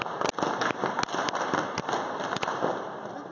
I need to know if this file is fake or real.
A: real